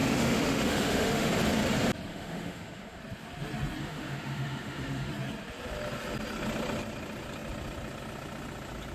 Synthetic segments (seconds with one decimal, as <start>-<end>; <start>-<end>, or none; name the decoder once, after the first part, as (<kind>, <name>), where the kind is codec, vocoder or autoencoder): 0.0-1.3 (autoencoder, DAC-VAE); 2.1-3.0; 3.8-5.1